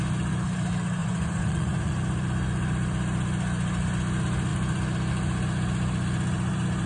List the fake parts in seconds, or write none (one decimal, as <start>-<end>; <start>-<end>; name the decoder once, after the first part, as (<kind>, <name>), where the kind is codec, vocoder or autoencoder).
1.0-1.9 (vocoder, Vocos)